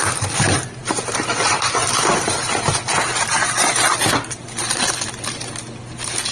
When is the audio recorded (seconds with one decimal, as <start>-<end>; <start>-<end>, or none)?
0.0-6.3